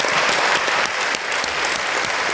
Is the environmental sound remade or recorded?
recorded